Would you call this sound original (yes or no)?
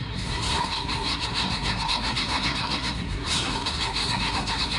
no